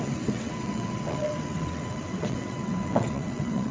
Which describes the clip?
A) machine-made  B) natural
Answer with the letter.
A